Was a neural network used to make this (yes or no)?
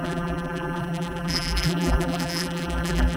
yes